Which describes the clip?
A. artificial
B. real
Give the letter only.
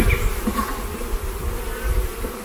A